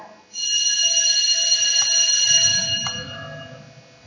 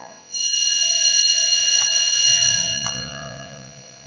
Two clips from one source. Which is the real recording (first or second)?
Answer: first